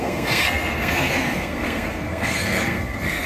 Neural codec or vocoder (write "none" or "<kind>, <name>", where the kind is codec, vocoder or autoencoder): codec, SNAC